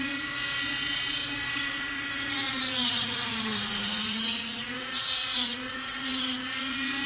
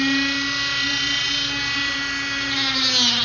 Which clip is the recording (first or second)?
second